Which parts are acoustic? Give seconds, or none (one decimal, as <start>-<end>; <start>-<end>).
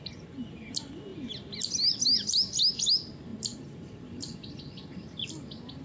0.0-5.8